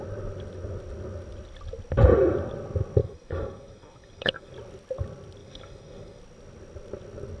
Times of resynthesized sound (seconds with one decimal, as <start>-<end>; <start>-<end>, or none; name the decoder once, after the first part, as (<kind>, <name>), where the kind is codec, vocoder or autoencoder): 3.0-4.5 (codec, DAC); 5.4-6.2